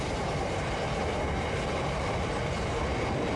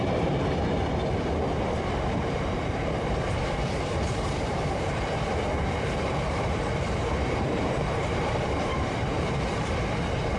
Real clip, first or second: first